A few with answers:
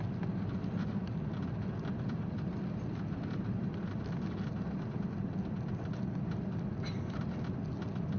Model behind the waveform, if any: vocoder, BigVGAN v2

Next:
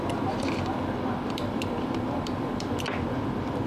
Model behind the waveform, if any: vocoder, BigVGAN v2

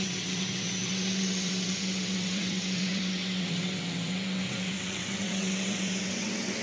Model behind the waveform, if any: vocoder, WaveNeXt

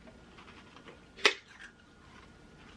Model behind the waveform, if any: none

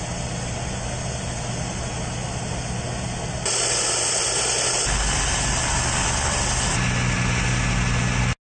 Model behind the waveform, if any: none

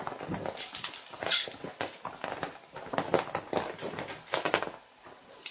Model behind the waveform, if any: none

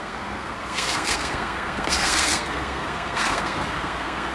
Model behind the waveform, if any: codec, SNAC